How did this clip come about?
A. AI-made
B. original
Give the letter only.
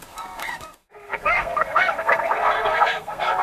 A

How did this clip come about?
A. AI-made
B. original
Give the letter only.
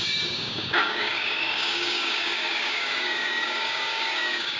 A